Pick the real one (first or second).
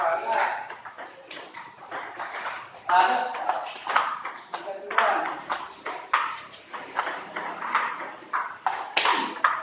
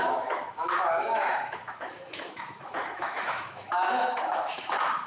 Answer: first